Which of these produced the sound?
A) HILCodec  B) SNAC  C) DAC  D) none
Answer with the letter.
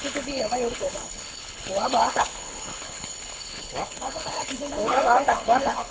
A